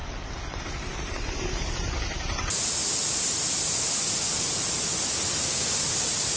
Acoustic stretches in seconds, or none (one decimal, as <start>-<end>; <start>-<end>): 0.0-0.6; 2.8-5.8